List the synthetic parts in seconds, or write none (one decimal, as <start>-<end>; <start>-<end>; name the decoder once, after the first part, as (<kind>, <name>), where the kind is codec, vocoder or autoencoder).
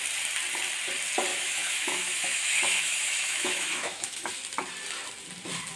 1.3-4.3 (autoencoder, DAC-VAE)